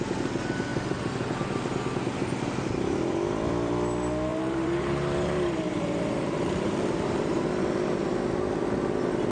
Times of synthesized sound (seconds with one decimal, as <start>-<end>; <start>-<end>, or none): 4.3-7.4